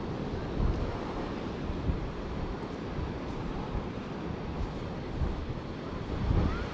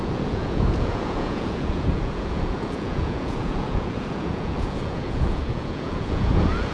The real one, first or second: first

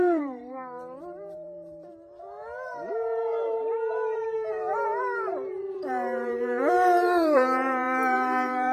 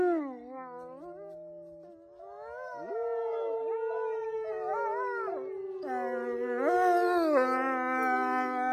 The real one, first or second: second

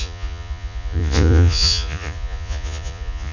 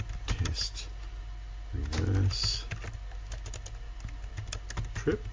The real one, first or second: second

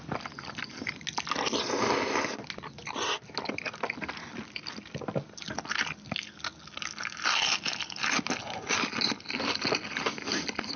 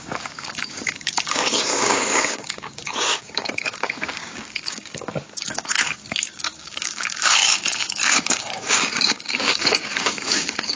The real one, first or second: first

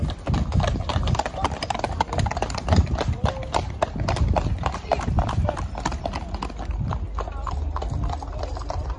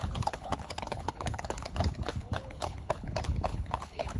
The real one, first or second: first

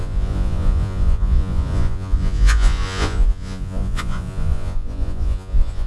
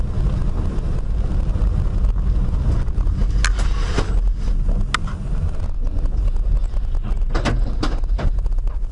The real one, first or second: second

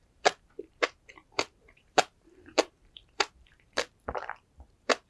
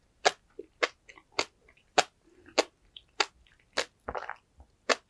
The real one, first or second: second